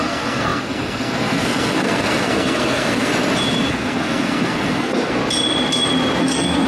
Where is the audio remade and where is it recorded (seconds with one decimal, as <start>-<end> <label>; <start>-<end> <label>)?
0.0-3.1 remade; 3.1-3.7 recorded; 3.7-5.2 remade; 5.2-6.2 recorded; 6.2-6.7 remade